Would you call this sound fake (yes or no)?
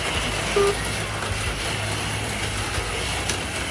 no